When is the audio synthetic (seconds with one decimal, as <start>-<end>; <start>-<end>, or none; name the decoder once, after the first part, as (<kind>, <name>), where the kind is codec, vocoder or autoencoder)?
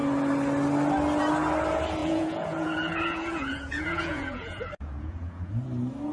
2.0-5.5 (vocoder, Vocos)